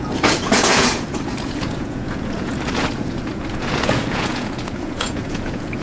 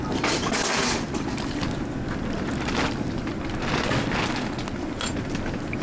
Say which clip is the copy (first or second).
first